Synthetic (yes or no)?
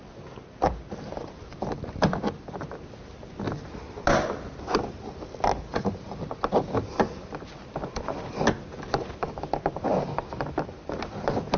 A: no